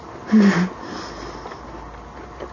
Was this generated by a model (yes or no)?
no